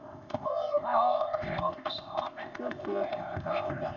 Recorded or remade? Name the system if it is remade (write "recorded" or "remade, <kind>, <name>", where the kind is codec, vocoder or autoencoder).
remade, codec, ZipCodec